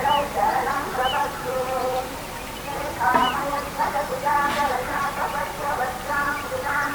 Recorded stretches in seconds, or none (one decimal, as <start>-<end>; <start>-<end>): 0.0-6.9